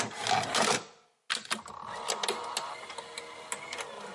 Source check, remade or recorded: recorded